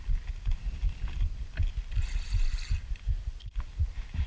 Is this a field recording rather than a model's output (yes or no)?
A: yes